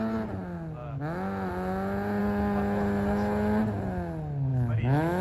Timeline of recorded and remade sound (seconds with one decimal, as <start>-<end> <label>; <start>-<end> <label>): 0.0-0.8 recorded; 0.8-1.5 remade; 1.5-4.5 recorded; 4.5-5.2 remade